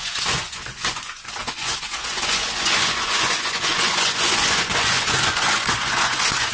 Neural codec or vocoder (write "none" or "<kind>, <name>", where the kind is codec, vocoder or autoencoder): vocoder, Vocos